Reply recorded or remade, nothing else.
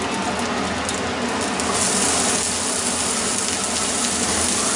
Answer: recorded